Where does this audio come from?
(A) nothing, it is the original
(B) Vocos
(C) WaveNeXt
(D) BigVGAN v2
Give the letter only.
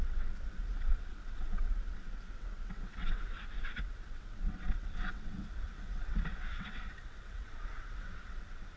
C